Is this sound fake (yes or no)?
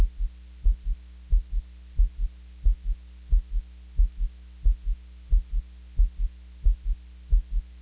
no